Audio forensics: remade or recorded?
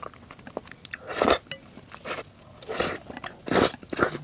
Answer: recorded